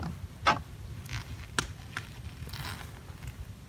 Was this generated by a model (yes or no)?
no